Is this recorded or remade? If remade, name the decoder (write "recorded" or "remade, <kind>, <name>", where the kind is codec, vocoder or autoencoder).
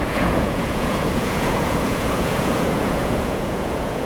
remade, vocoder, Vocos